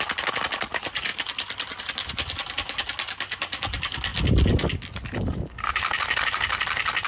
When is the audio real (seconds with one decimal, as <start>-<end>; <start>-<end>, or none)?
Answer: 0.0-1.1; 1.8-7.1